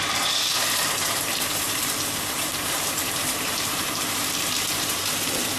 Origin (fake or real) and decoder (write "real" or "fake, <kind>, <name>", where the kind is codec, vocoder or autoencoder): fake, vocoder, BigVGAN v2